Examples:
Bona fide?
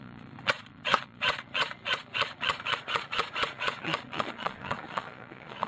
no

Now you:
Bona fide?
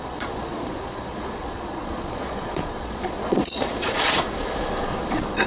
no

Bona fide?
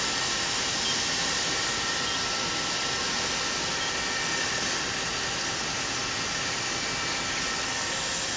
yes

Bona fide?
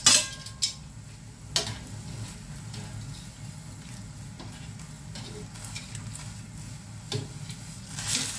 yes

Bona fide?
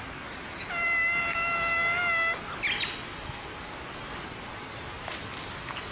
yes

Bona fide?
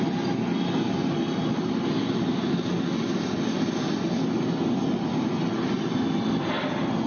yes